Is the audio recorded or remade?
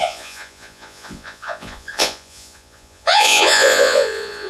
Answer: remade